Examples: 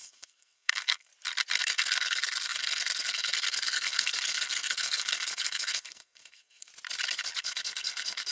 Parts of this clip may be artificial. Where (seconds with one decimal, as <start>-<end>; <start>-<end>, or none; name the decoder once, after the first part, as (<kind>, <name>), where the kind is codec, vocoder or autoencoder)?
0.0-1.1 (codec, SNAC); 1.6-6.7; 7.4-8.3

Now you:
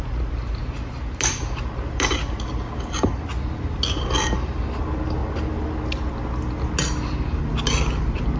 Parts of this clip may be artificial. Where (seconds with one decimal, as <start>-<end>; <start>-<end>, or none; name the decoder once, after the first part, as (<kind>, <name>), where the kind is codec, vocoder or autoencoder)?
none

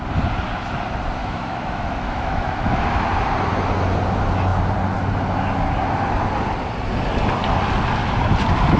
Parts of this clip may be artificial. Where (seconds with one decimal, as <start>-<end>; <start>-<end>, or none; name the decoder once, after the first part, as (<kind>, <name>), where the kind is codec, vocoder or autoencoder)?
1.2-3.0 (autoencoder, DAC-VAE)

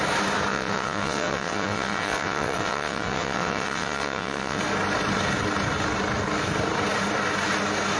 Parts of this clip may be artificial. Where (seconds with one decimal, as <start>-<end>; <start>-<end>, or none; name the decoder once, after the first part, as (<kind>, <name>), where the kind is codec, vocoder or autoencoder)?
0.5-4.6 (vocoder, WaveNeXt)

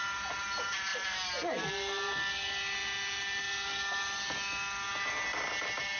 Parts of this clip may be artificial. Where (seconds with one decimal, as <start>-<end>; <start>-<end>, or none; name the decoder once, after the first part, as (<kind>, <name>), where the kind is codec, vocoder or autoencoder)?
none

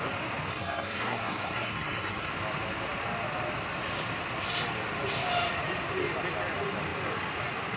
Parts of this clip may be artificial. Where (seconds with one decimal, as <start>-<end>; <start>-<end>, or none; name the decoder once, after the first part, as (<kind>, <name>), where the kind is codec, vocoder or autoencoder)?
0.5-2.3 (codec, SNAC)

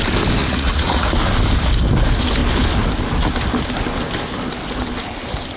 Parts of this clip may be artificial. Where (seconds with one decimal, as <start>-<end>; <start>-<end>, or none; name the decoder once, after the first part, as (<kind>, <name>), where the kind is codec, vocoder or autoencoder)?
0.4-1.1 (vocoder, Vocos)